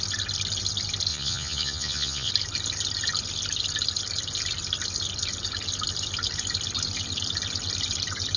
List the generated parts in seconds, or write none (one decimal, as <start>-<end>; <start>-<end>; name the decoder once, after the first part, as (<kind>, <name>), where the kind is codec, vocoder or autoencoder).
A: 1.1-2.3 (vocoder, Vocos)